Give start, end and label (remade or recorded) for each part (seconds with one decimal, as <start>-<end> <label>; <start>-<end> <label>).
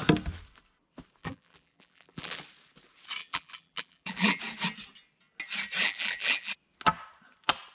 0.0-1.2 recorded; 1.2-2.4 remade; 2.4-3.2 recorded; 3.2-4.4 remade; 4.4-5.8 recorded; 5.8-6.5 remade; 6.5-7.7 recorded